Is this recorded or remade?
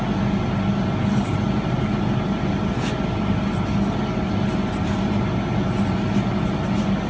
recorded